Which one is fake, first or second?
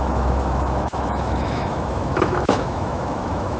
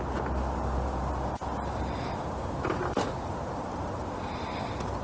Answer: first